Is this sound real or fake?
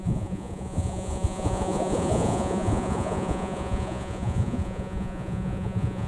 fake